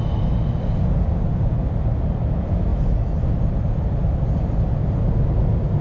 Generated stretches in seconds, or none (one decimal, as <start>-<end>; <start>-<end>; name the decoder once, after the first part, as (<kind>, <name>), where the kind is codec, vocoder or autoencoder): none